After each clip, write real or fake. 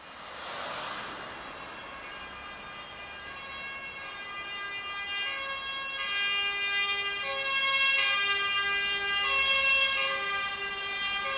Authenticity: real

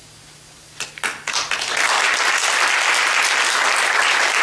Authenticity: real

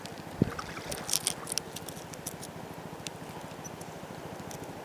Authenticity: real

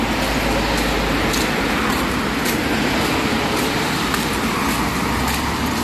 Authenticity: real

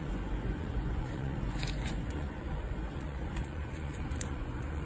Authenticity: fake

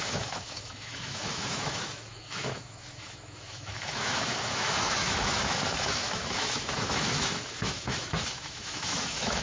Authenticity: fake